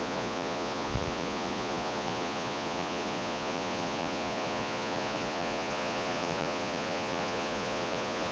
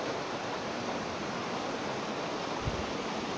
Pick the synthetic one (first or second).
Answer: first